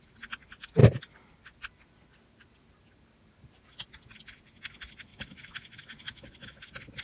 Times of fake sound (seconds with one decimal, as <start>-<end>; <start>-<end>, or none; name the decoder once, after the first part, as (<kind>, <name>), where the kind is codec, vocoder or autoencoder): 5.1-6.6 (autoencoder, DAC-VAE)